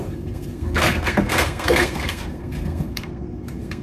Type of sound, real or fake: fake